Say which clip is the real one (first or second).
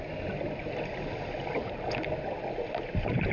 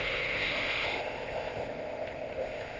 first